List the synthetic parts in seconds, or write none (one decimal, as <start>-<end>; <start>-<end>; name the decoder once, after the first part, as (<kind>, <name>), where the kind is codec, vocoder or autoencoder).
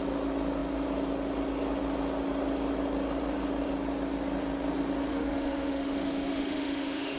5.1-7.2 (autoencoder, DAC-VAE)